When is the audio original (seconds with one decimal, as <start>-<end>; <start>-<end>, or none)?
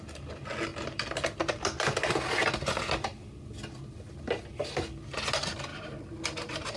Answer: 0.0-5.7